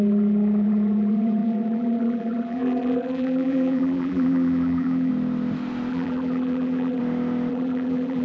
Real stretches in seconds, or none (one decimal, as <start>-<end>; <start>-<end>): 5.1-5.9; 7.0-7.5